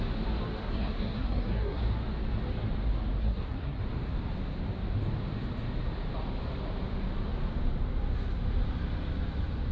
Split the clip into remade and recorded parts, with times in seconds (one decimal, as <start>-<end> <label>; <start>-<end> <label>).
0.0-0.6 recorded; 0.6-1.8 remade; 1.8-3.2 recorded; 3.2-3.8 remade; 3.8-9.7 recorded